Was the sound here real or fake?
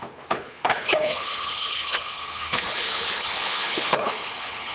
fake